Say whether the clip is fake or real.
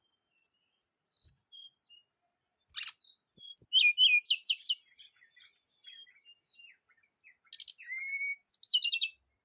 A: real